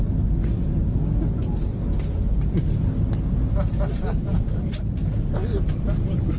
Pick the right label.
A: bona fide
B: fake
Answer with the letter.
A